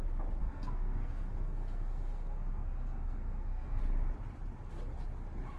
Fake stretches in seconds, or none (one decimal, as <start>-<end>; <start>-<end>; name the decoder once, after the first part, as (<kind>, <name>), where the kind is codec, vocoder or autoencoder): 0.4-3.8 (codec, SNAC)